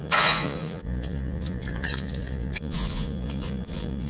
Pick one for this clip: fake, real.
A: fake